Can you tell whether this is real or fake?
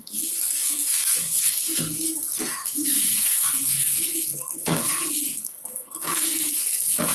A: fake